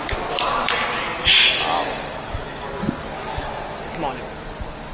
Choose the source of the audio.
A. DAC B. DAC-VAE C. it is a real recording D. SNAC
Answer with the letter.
C